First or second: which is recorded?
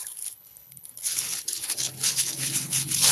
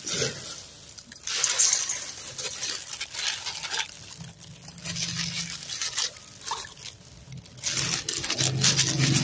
second